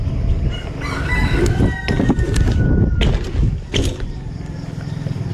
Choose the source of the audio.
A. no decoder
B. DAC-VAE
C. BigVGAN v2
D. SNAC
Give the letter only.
A